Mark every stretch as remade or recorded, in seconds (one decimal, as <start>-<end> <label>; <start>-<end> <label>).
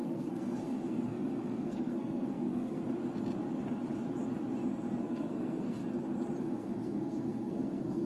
0.0-2.8 remade; 2.8-5.0 recorded; 5.0-5.8 remade; 5.8-6.4 recorded; 6.4-8.1 remade